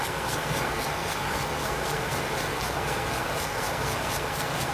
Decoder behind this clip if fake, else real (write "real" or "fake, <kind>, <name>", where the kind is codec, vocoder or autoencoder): fake, codec, SNAC